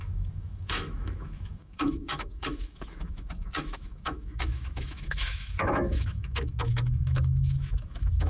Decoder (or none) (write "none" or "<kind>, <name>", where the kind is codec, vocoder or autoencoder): autoencoder, DAC-VAE